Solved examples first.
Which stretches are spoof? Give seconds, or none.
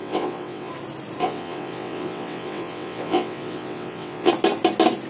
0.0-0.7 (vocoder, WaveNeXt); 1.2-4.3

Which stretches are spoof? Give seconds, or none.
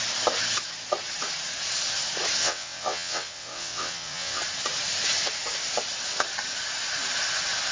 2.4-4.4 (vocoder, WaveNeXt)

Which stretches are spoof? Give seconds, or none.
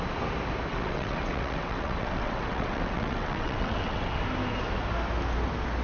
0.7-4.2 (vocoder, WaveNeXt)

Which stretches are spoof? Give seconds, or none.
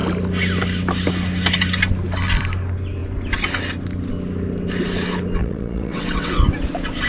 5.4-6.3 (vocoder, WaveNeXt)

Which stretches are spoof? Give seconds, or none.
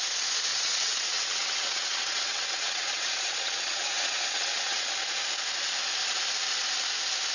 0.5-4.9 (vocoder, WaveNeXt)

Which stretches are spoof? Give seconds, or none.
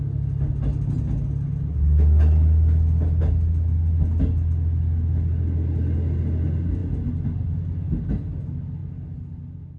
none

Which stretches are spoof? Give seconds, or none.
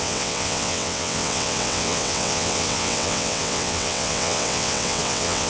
0.0-5.5 (vocoder, WaveNeXt)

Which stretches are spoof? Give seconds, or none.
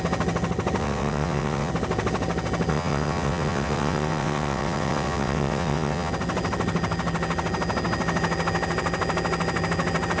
0.8-1.7 (vocoder, WaveNeXt); 2.7-6.1